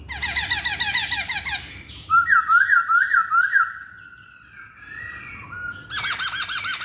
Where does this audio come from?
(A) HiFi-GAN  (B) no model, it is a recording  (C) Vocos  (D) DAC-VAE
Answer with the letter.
B